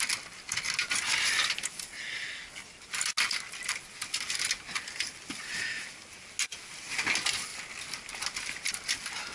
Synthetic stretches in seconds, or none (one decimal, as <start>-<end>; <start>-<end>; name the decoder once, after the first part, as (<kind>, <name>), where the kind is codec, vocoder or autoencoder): none